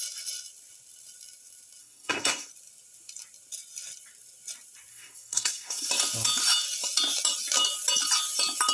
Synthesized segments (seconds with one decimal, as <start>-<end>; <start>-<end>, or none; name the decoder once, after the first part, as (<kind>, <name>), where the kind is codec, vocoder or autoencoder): 1.8-2.5 (codec, SNAC); 4.9-5.9